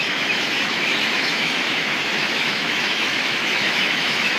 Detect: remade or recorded remade